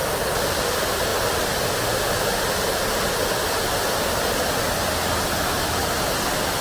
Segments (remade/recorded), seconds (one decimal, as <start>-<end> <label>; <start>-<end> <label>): 0.0-6.6 recorded